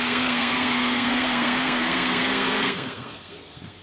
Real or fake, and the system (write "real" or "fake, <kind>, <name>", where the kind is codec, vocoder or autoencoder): fake, codec, SNAC